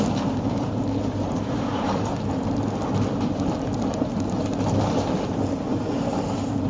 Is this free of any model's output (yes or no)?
yes